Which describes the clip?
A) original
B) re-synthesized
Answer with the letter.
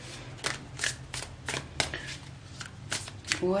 A